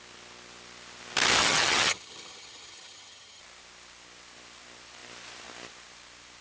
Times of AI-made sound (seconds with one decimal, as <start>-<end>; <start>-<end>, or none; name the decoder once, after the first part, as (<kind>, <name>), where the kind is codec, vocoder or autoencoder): 1.4-3.4 (vocoder, HiFi-GAN)